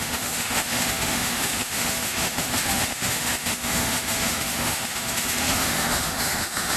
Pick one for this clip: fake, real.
fake